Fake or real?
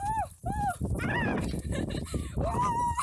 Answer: real